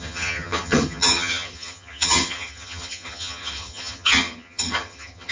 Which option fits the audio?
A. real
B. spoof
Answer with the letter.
B